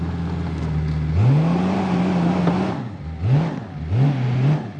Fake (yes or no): no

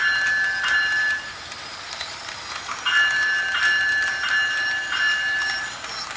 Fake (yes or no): no